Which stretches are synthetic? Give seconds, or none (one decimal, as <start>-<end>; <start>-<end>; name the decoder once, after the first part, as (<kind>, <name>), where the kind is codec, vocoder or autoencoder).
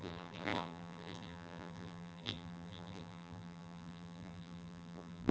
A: 0.0-5.3 (vocoder, BigVGAN v2)